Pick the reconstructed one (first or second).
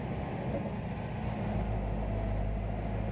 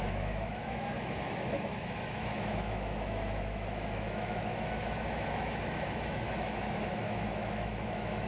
second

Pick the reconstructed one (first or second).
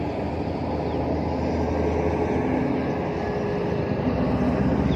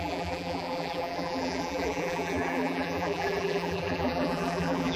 second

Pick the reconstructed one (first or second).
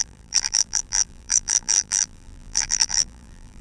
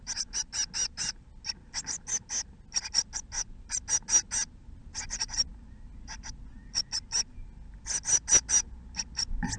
first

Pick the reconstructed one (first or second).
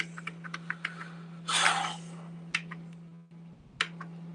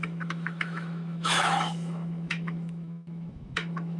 second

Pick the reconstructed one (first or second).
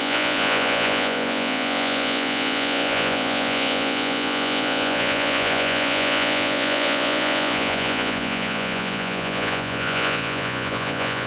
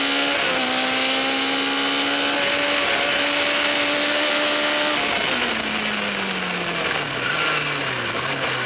first